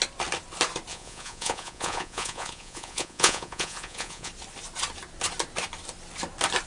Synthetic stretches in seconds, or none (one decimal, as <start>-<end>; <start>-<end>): 0.9-4.3